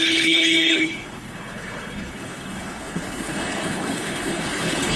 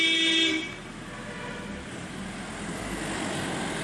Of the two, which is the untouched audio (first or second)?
second